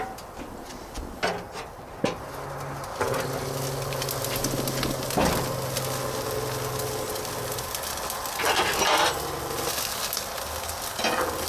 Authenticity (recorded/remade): recorded